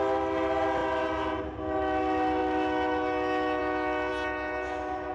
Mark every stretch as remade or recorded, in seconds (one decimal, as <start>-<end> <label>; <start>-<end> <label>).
0.0-5.1 recorded